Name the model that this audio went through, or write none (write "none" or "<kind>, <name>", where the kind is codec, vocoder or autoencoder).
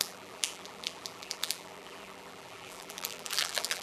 vocoder, BigVGAN v2